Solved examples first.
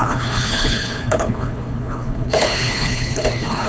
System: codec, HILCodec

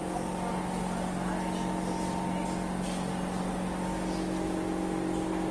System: none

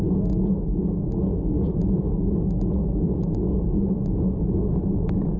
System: none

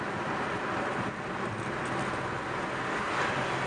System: none